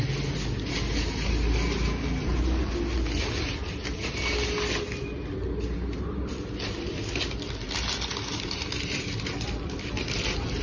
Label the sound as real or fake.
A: real